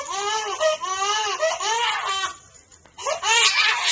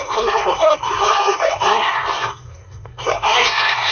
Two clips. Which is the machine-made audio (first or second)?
second